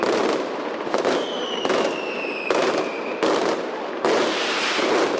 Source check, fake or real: real